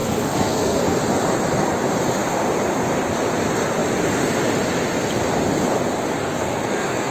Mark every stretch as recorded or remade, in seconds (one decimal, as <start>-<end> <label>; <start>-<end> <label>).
0.0-1.0 remade; 1.0-6.2 recorded; 6.2-7.1 remade